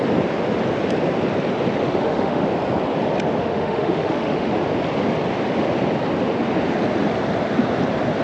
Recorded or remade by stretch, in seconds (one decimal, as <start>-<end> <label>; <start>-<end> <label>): 0.0-1.8 recorded; 1.8-2.5 remade; 2.5-3.4 recorded; 3.4-4.5 remade; 4.5-8.2 recorded